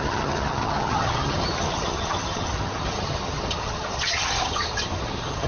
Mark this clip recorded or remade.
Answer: remade